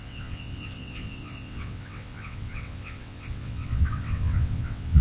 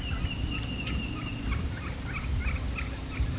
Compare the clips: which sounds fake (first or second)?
first